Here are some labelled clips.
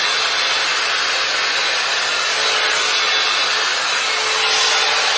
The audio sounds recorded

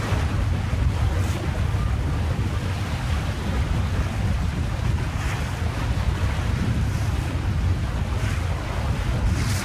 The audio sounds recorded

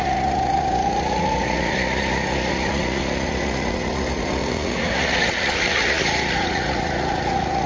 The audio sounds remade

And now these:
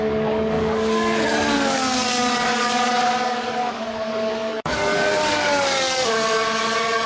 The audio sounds remade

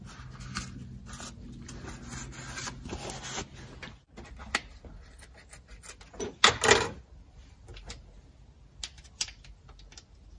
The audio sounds recorded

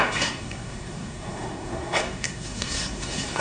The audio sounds remade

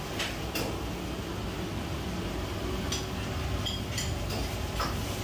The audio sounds recorded